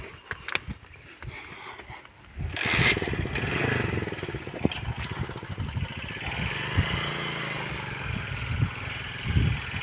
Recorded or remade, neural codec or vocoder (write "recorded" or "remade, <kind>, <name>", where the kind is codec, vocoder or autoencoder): recorded